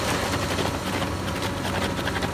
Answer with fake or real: real